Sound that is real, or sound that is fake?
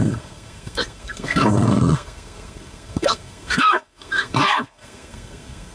fake